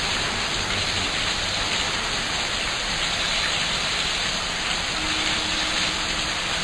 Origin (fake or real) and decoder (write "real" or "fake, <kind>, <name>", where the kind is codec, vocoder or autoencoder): real